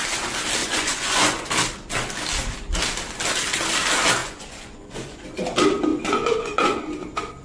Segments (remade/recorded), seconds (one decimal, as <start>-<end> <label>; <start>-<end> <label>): 0.0-0.6 recorded; 0.6-1.5 remade; 1.5-4.2 recorded; 4.2-5.2 remade; 5.2-5.9 recorded; 5.9-6.9 remade; 6.9-7.4 recorded